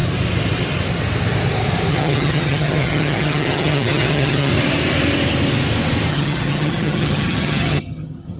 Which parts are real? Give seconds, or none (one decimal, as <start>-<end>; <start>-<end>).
0.0-1.9; 4.5-6.1